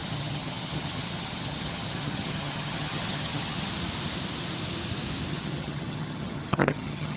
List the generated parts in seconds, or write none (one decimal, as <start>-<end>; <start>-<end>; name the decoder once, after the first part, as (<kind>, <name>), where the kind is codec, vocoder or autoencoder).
0.0-3.7 (vocoder, HiFi-GAN); 5.3-7.2